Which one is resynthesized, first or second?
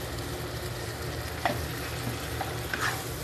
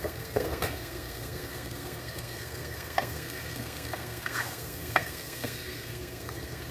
second